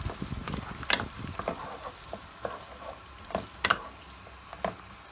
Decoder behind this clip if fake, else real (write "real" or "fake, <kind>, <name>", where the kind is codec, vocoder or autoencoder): real